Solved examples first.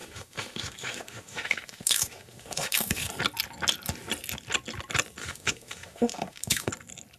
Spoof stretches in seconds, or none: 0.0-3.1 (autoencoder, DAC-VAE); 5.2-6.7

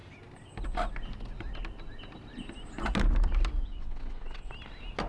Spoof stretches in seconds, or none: 3.6-4.5 (vocoder, WaveNeXt)

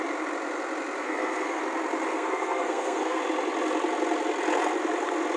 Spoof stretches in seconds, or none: 1.0-1.6 (codec, SNAC); 2.1-3.2

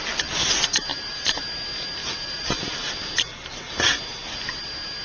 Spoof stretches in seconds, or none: 0.9-1.4 (vocoder, BigVGAN v2); 2.0-2.9